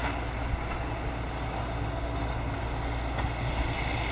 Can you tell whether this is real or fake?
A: real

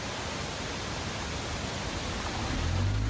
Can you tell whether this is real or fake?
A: real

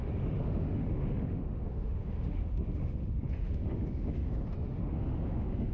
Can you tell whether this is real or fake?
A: fake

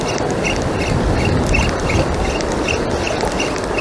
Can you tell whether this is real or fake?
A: real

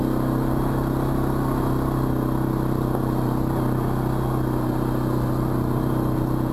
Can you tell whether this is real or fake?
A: real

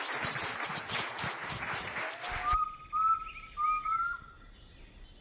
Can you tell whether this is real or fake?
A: real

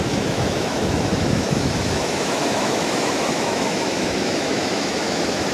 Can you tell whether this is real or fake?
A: fake